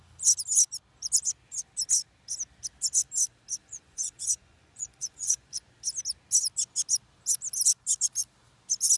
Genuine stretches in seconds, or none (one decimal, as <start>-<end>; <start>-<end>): 0.0-3.6; 5.7-9.0

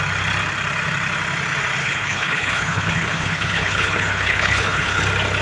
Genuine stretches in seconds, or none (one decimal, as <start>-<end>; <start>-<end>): 0.0-1.8; 5.0-5.4

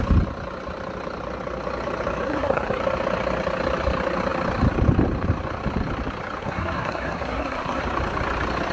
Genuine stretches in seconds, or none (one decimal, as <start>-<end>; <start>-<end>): 0.0-2.2; 2.8-6.4; 7.8-8.7

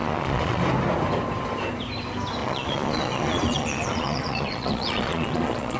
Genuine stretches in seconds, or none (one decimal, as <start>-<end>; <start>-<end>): 0.6-2.4

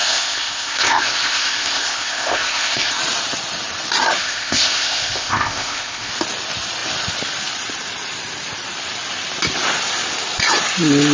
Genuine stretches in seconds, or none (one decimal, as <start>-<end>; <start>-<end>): 3.0-4.2; 6.1-11.1